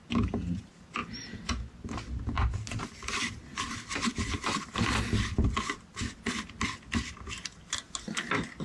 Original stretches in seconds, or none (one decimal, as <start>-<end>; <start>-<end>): 0.0-8.6